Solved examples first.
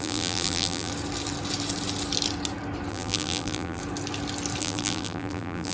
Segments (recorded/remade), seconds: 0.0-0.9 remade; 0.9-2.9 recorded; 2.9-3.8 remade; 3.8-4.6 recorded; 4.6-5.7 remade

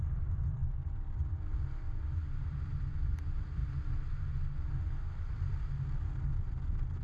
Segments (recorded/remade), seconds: 0.0-3.6 remade; 3.6-6.3 recorded; 6.3-7.0 remade

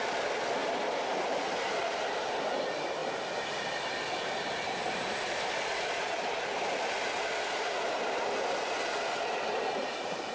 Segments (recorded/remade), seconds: 0.0-0.6 recorded; 0.6-1.4 remade; 1.4-3.0 recorded; 3.0-5.5 remade; 5.5-10.3 recorded

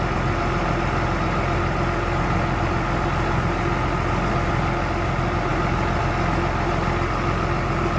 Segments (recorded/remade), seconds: 0.0-8.0 recorded

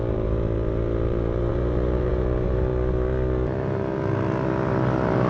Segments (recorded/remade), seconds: 0.0-2.7 remade; 2.7-5.3 recorded

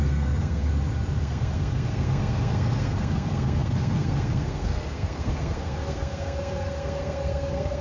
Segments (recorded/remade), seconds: 0.0-0.7 remade; 0.7-1.2 recorded; 1.2-7.8 remade

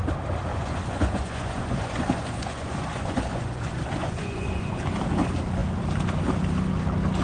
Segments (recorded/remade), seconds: 0.0-0.5 recorded; 0.5-4.8 remade; 4.8-7.2 recorded